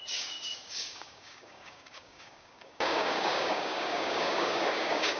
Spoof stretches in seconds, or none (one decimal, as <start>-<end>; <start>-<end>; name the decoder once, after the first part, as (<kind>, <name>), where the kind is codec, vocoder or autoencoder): 0.0-5.2 (codec, DAC)